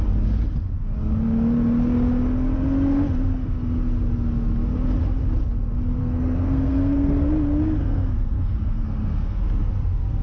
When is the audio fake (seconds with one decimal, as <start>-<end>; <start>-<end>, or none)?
6.0-7.3; 7.8-9.4